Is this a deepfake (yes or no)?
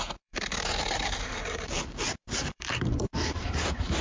yes